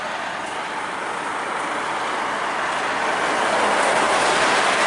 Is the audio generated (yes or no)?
no